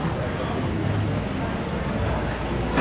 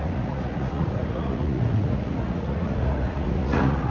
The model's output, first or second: second